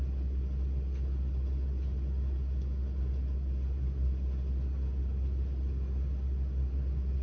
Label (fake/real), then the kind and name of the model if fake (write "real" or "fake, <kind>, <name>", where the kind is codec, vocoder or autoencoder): real